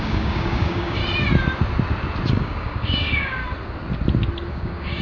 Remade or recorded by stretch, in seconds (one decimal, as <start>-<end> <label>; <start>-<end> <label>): 0.0-1.0 remade; 1.0-2.3 recorded; 2.3-3.4 remade; 3.4-4.5 recorded; 4.5-5.0 remade